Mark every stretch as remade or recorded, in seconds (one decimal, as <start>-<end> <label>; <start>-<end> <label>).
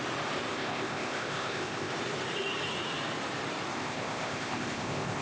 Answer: 0.0-0.5 recorded; 0.5-1.9 remade; 1.9-3.7 recorded; 3.7-5.2 remade